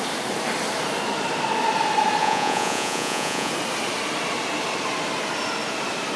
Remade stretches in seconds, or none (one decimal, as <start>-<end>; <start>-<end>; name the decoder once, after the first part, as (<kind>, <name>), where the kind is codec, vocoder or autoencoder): 2.2-3.5 (vocoder, Vocos)